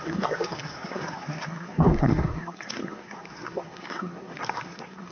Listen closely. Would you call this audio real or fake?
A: fake